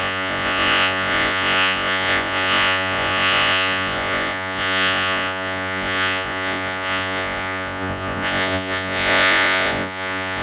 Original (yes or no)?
no